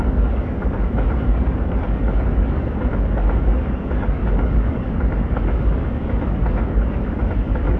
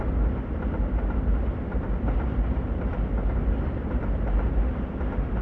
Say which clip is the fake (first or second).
first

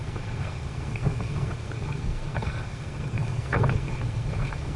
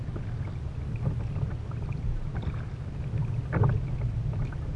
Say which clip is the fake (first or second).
first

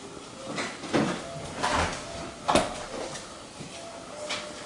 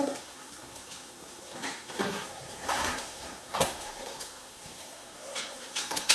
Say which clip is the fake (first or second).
second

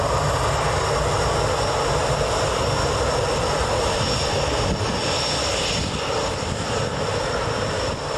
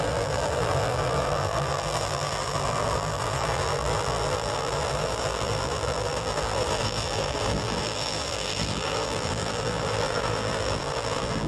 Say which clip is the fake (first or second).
second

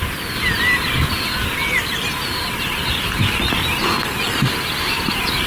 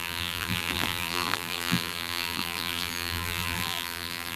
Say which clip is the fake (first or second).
second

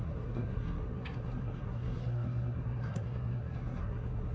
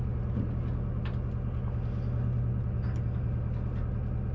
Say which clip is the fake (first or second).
first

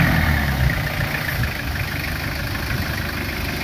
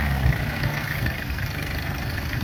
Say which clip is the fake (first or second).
second